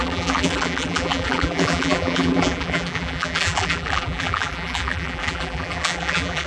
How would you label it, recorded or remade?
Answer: remade